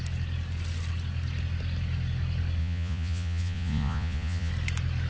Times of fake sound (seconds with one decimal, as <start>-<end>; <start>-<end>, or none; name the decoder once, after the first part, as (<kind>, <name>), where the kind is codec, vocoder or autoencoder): 2.6-4.5 (vocoder, Vocos)